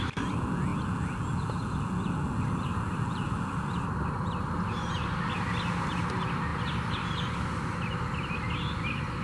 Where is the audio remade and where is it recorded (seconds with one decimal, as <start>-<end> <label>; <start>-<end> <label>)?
0.0-9.2 recorded